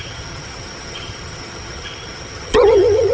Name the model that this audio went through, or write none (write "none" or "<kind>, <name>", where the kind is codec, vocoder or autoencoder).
vocoder, HiFi-GAN